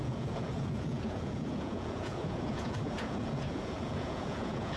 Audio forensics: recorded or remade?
remade